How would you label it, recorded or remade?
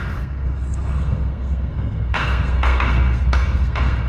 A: remade